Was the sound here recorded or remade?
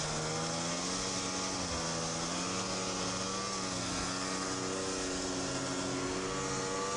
recorded